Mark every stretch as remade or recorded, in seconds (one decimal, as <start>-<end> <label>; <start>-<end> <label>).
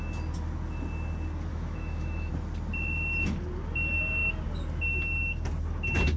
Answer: 0.0-1.5 recorded; 1.5-2.3 remade; 2.3-6.2 recorded